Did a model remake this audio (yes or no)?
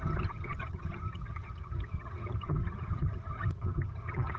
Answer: yes